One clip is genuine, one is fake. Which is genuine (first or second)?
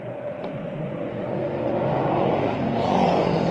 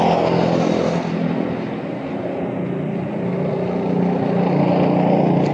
second